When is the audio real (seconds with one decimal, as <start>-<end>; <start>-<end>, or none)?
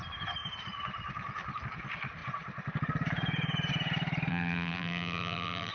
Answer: 0.0-4.3